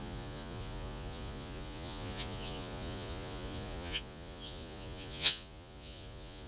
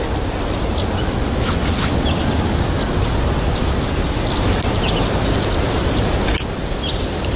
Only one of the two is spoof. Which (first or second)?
first